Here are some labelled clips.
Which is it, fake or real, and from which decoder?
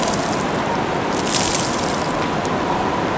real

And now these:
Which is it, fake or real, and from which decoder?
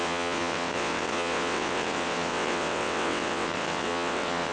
fake, vocoder, WaveNeXt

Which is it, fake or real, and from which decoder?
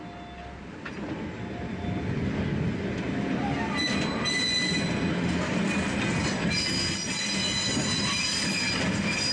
real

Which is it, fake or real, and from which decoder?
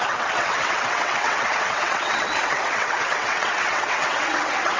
fake, vocoder, WaveNeXt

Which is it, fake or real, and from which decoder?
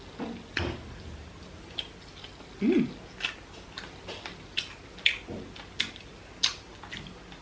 real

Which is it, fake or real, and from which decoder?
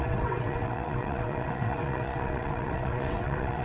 fake, vocoder, WaveNeXt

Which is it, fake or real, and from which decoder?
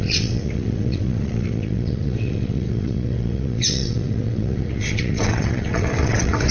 fake, vocoder, WaveNeXt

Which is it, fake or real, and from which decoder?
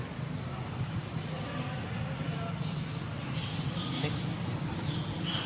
real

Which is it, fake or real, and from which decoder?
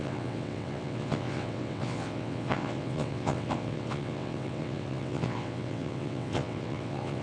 fake, vocoder, WaveNeXt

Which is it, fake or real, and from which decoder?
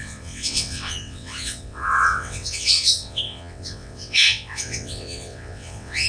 fake, vocoder, WaveNeXt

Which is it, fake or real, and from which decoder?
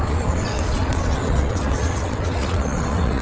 fake, vocoder, WaveNeXt